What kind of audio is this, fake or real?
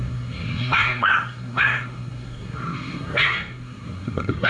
fake